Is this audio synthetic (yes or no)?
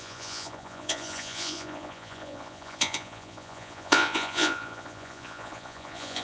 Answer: yes